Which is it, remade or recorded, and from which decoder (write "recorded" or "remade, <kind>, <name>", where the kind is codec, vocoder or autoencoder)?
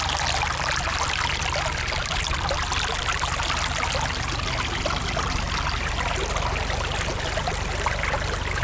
recorded